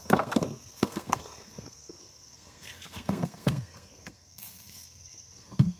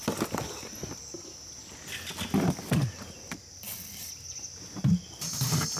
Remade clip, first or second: first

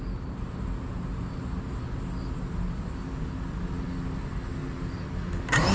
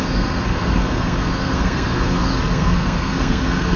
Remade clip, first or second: second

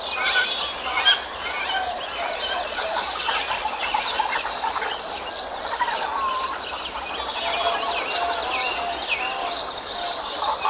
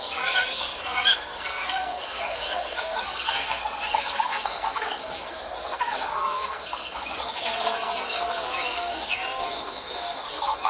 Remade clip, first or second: second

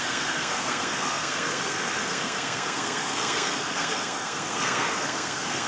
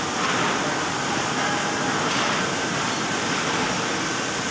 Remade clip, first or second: first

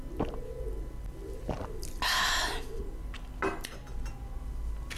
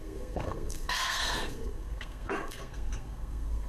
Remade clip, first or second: second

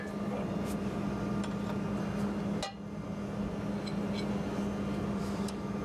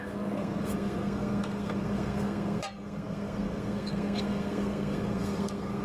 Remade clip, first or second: second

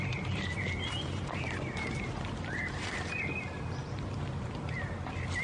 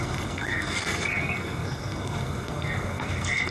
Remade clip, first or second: second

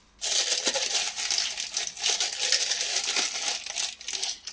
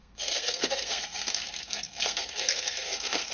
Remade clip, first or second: second